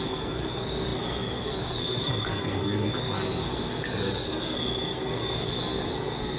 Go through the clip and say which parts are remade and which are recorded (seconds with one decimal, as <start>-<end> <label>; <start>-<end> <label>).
0.0-6.4 remade

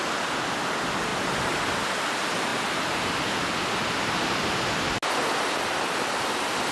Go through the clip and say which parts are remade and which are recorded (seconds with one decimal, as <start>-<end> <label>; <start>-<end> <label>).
0.0-6.7 recorded

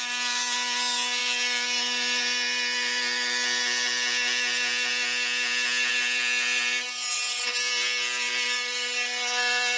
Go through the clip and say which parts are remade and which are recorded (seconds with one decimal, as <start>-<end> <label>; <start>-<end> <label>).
0.0-9.8 recorded

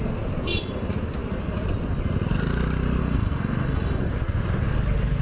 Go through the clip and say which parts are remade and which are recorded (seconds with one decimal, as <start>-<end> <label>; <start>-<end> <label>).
0.0-3.0 recorded; 3.0-4.1 remade; 4.1-5.2 recorded

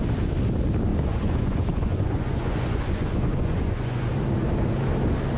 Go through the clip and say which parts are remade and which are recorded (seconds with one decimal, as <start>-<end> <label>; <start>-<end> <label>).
0.0-0.9 recorded; 0.9-4.1 remade; 4.1-5.4 recorded